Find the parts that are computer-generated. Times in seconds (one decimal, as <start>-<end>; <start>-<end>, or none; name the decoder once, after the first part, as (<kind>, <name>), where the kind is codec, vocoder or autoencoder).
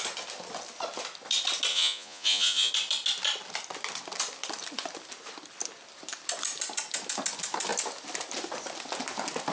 1.7-2.7 (vocoder, Vocos)